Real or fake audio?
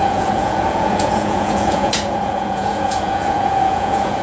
fake